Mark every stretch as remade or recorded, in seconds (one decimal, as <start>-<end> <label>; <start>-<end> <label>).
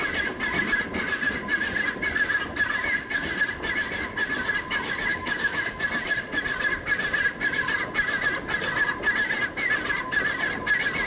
0.0-5.1 recorded; 5.1-5.8 remade; 5.8-11.1 recorded